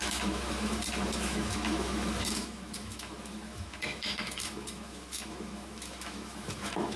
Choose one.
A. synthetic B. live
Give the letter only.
A